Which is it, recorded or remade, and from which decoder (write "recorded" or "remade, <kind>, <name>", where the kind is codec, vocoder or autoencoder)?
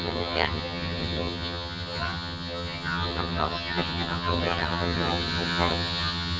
remade, vocoder, HiFi-GAN